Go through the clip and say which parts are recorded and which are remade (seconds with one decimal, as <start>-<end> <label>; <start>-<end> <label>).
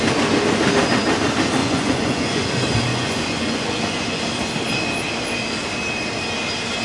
0.0-1.6 recorded; 1.6-2.5 remade; 2.5-2.9 recorded; 2.9-4.2 remade; 4.2-6.8 recorded